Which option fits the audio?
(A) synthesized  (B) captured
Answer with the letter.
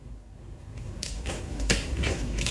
A